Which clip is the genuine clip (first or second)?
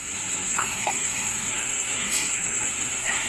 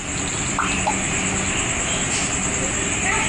second